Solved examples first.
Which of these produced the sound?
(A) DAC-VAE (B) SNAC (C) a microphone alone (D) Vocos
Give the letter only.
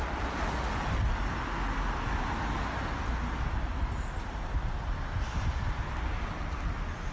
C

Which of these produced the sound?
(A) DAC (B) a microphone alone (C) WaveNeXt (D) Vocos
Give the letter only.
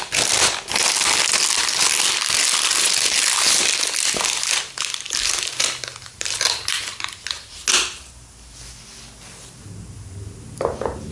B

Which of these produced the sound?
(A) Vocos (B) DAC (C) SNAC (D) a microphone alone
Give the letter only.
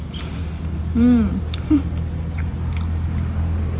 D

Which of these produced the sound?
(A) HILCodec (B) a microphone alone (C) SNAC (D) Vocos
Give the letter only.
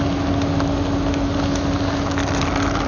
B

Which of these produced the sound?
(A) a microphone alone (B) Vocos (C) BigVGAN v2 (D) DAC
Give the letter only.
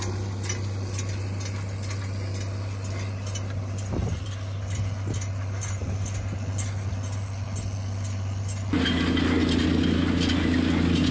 A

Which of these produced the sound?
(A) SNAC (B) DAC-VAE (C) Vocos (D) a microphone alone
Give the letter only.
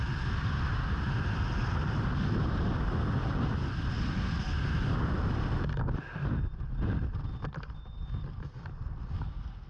D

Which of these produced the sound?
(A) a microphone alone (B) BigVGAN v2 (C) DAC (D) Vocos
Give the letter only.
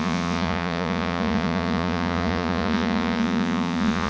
D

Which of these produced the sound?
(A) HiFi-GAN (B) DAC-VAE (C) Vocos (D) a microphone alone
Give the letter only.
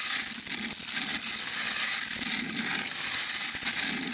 D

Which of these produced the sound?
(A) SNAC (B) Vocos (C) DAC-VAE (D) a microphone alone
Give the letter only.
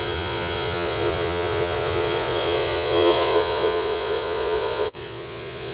B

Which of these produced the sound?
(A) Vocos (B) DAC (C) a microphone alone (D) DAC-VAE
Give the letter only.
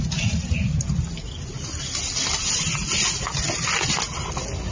C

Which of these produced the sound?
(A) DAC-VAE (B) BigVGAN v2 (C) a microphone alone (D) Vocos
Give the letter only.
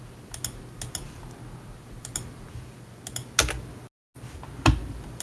C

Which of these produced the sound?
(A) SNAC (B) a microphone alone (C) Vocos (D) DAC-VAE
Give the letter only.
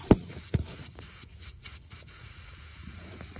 C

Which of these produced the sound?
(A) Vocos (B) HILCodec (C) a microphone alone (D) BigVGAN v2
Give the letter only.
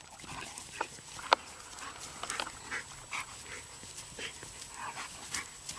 C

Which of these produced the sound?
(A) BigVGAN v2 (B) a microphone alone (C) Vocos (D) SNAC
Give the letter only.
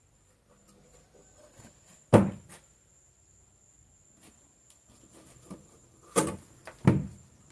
B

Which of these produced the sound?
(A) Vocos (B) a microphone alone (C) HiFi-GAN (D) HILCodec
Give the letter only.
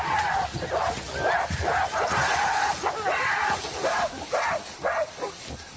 B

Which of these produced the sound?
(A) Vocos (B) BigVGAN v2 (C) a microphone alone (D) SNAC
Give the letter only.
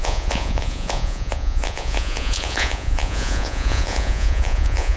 A